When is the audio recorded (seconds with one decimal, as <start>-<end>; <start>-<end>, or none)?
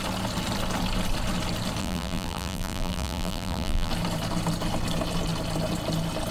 0.0-1.8; 3.9-6.3